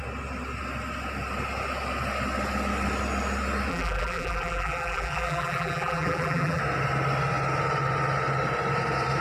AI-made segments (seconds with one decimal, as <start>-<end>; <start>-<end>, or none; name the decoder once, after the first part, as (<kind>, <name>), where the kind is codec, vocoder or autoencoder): 3.7-6.6 (vocoder, BigVGAN v2)